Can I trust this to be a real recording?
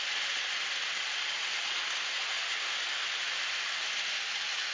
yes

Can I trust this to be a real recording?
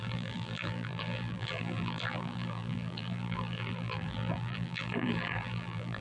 no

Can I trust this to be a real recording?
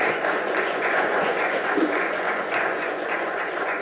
no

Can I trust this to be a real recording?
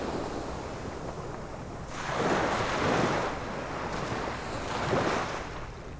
yes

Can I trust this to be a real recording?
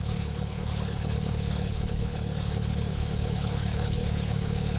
no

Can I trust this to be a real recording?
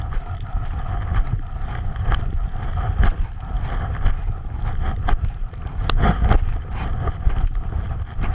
yes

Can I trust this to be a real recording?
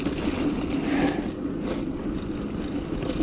yes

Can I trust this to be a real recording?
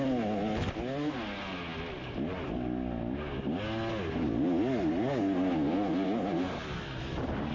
yes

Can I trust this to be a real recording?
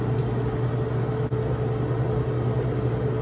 yes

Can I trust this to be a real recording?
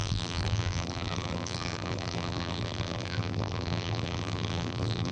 no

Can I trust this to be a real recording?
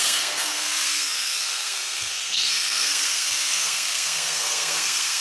no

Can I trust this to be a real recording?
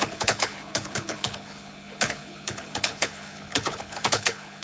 no